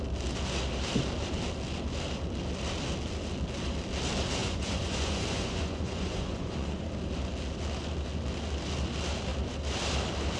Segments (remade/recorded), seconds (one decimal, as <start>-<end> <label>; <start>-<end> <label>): 0.0-4.4 recorded; 4.4-6.9 remade; 6.9-10.4 recorded